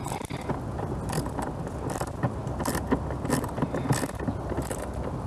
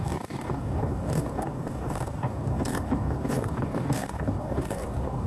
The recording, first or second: first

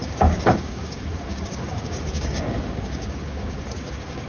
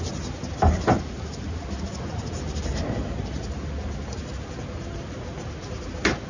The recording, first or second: second